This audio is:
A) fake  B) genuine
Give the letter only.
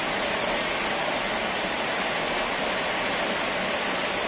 B